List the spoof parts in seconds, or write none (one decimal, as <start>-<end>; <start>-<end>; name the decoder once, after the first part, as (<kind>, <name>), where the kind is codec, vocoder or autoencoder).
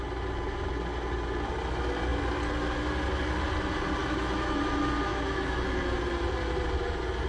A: 4.0-4.6 (autoencoder, DAC-VAE); 5.1-5.8